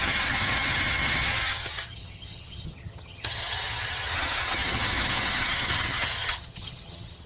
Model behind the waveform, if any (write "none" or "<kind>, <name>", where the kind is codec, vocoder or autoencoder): vocoder, HiFi-GAN